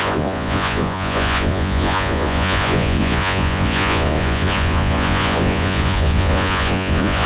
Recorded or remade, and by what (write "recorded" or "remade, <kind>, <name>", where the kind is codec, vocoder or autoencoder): remade, vocoder, Vocos